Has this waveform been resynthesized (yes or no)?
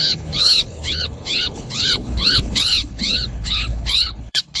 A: yes